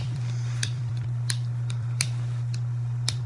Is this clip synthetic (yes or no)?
yes